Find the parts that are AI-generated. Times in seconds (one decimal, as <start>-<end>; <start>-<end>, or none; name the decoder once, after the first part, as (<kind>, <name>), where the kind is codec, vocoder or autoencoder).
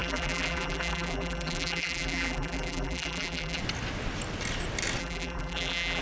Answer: 0.0-3.6 (vocoder, BigVGAN v2); 5.0-6.0